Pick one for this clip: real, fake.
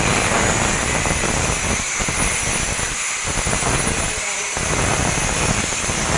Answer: real